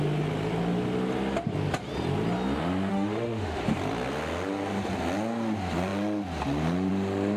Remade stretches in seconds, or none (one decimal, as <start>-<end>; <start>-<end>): 2.9-3.6